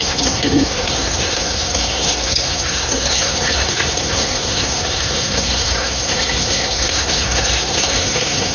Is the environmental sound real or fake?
fake